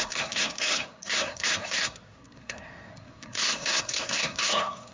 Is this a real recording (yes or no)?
no